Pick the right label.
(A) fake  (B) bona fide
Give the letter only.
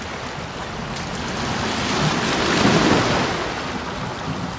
B